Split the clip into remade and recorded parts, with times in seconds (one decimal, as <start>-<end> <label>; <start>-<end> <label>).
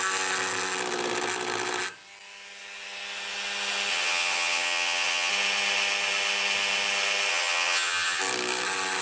0.0-3.9 recorded; 3.9-5.3 remade; 5.3-7.3 recorded; 7.3-8.2 remade; 8.2-9.0 recorded